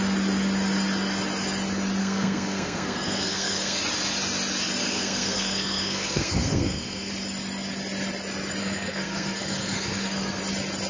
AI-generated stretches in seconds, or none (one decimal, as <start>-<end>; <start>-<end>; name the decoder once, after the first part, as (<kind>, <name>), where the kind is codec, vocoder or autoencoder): 2.0-3.8 (codec, SNAC); 4.8-7.1; 8.6-10.4